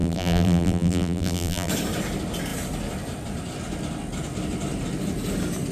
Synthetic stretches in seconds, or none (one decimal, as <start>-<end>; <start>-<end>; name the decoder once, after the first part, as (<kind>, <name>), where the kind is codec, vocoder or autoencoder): 0.0-1.7 (vocoder, BigVGAN v2)